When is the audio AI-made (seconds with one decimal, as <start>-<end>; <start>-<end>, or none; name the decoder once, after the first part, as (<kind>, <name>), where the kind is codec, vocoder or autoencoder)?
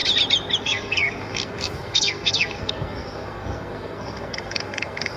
0.6-5.2 (codec, SNAC)